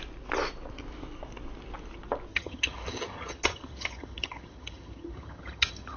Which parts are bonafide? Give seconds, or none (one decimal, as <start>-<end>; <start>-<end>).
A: 0.0-2.3